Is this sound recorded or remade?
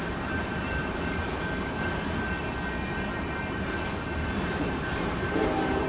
remade